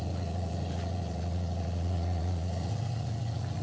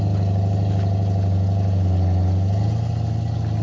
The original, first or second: second